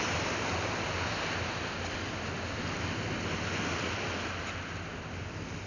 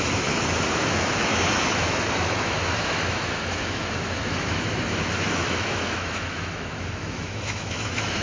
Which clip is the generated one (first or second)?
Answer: second